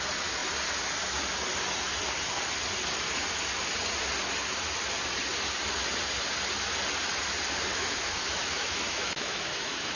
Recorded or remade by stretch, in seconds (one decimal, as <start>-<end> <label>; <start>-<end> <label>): 0.0-7.7 recorded; 7.7-10.0 remade